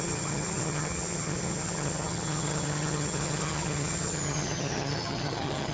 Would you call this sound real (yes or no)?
no